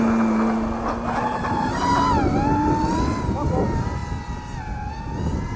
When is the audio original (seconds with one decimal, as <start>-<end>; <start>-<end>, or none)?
0.0-5.6